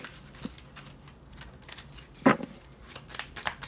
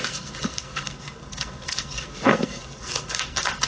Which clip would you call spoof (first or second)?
second